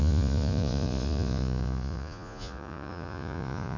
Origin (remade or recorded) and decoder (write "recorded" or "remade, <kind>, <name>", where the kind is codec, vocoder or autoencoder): remade, vocoder, Vocos